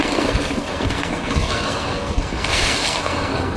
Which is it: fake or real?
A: fake